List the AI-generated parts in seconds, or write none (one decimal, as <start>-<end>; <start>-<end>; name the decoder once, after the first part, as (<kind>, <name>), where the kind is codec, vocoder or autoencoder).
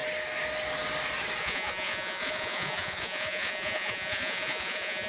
1.4-5.1 (vocoder, Vocos)